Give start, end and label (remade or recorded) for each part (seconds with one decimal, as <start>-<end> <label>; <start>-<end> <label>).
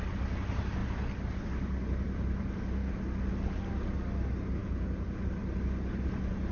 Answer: 0.0-4.6 recorded; 4.6-5.3 remade; 5.3-6.5 recorded